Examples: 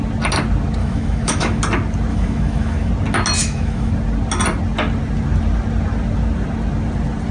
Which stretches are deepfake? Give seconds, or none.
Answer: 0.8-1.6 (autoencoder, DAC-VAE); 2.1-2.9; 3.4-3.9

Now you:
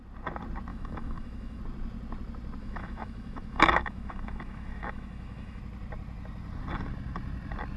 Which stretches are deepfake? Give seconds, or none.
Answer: 0.7-1.6 (autoencoder, DAC-VAE); 2.6-5.6

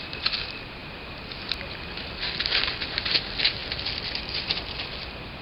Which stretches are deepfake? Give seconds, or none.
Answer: none

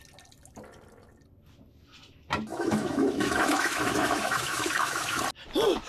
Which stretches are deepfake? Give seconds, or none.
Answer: 2.5-5.2 (autoencoder, DAC-VAE)